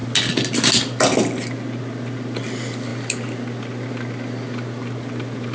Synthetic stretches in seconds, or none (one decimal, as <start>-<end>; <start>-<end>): none